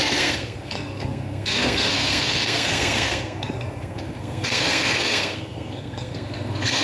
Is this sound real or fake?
fake